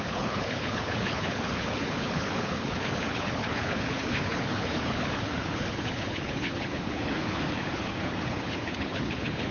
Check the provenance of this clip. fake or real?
fake